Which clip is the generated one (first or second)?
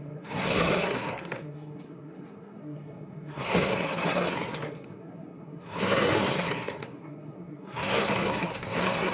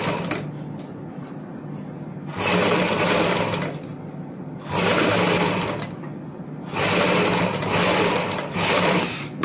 first